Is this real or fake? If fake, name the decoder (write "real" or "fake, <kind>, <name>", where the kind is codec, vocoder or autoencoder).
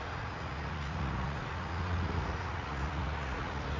fake, vocoder, Vocos